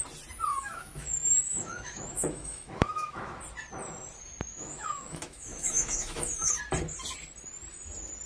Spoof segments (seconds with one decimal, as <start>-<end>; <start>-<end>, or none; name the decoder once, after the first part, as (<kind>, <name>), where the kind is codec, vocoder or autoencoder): 0.5-3.4 (autoencoder, DAC-VAE); 4.5-6.5